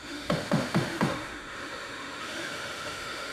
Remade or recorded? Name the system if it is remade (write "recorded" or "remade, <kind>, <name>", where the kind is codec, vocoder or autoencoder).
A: remade, autoencoder, DAC-VAE